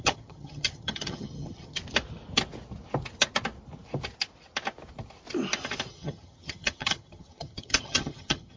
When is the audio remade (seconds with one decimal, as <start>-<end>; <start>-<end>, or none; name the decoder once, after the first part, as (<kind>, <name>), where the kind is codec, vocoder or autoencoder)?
0.0-1.8 (vocoder, HiFi-GAN); 5.9-8.6